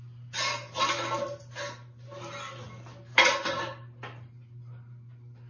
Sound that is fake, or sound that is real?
real